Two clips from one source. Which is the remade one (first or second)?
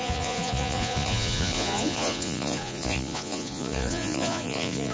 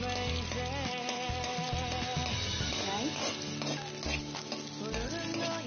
first